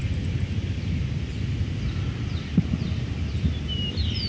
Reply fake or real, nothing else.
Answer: real